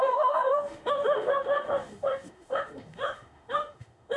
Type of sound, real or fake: fake